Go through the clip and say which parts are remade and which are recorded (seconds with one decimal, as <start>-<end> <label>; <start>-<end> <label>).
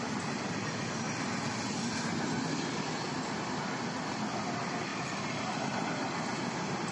0.0-4.9 recorded; 4.9-5.6 remade; 5.6-6.9 recorded